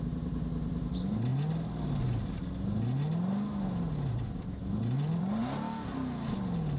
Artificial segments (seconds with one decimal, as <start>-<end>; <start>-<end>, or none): 0.0-1.3; 4.1-5.4